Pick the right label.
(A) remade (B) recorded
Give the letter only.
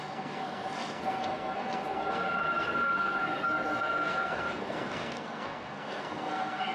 A